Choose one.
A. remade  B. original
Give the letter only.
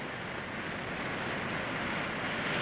B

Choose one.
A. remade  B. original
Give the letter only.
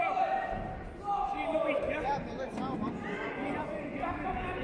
A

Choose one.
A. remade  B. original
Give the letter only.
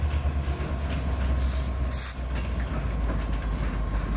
B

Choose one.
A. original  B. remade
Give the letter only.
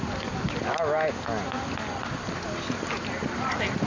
A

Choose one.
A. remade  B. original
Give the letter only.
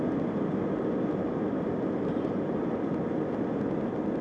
B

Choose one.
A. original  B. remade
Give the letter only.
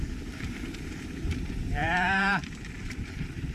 B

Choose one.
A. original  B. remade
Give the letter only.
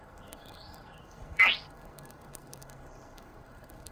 B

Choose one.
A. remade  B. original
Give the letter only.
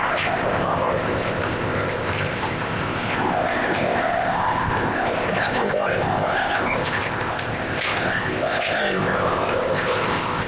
A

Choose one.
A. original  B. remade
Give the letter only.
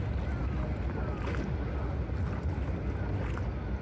A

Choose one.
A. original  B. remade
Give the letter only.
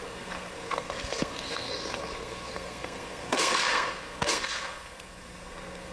B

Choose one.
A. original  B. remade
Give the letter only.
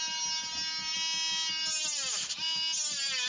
A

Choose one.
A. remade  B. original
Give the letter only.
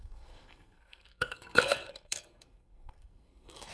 A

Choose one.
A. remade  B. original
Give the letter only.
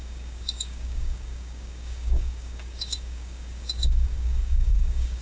A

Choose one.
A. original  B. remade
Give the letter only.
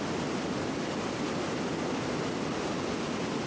A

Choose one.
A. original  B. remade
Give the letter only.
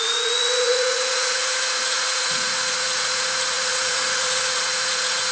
B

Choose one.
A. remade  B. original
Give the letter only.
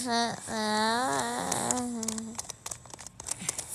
B